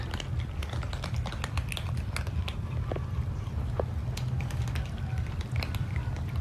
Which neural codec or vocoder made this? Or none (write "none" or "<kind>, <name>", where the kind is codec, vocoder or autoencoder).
none